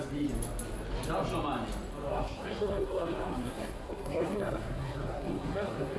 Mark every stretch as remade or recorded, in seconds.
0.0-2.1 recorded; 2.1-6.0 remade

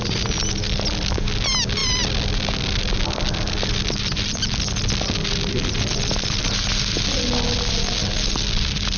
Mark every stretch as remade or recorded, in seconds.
0.0-9.0 recorded

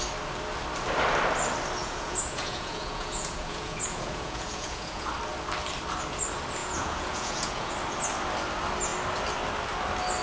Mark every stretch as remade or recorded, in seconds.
0.0-1.8 recorded; 1.8-5.1 remade; 5.1-6.6 recorded; 6.6-7.7 remade; 7.7-10.2 recorded